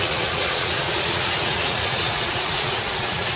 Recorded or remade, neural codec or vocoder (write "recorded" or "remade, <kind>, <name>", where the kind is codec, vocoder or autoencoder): remade, vocoder, Vocos